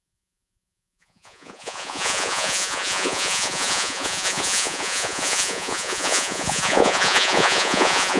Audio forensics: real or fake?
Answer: fake